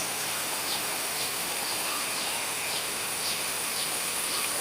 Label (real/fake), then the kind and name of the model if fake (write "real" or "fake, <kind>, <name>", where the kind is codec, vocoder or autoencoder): fake, autoencoder, DAC-VAE